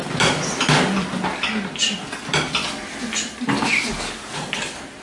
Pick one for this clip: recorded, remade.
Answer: recorded